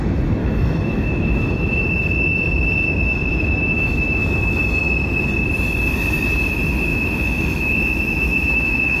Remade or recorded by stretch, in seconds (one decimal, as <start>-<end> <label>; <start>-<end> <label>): 0.0-0.4 recorded; 0.4-1.8 remade; 1.8-3.3 recorded; 3.3-4.6 remade; 4.6-6.9 recorded; 6.9-9.0 remade